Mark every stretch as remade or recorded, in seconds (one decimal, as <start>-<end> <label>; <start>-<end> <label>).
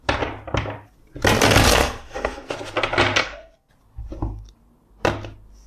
0.0-1.8 recorded; 1.8-2.5 remade; 2.5-3.2 recorded; 3.2-3.7 remade; 3.7-5.7 recorded